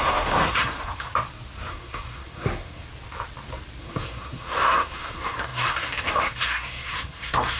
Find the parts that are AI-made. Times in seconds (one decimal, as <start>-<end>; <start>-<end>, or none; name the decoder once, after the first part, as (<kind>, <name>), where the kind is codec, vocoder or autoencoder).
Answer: 0.0-1.1 (codec, SNAC); 1.7-2.8; 3.8-7.6